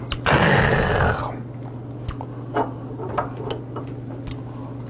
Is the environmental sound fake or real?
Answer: real